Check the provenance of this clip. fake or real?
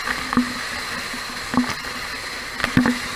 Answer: real